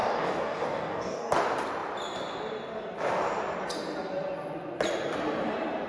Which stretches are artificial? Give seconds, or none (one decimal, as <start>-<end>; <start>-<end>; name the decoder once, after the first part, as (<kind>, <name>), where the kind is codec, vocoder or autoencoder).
0.0-1.3 (codec, DAC)